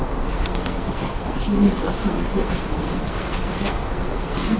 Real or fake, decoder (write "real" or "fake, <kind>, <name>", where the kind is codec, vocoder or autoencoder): fake, codec, SNAC